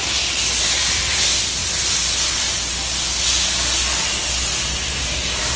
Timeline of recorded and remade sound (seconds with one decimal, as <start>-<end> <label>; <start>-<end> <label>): 0.0-5.6 recorded